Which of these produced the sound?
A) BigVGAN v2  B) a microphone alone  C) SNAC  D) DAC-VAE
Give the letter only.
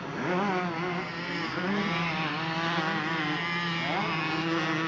B